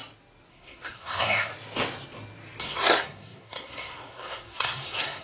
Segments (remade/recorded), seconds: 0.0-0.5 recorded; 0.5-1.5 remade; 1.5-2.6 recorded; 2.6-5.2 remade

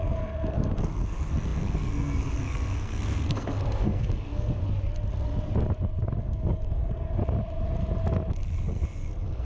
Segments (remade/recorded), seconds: 0.0-4.6 remade; 4.6-6.2 recorded; 6.2-7.2 remade; 7.2-8.6 recorded; 8.6-9.4 remade